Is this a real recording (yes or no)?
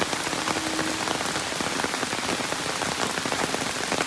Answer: yes